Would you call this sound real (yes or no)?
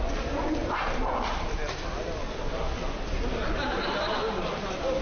yes